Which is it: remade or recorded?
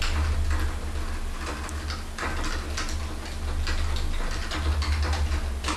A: recorded